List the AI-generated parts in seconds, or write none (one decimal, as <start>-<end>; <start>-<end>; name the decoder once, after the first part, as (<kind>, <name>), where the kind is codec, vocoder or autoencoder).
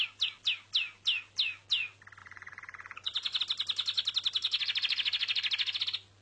2.2-3.4 (vocoder, Vocos)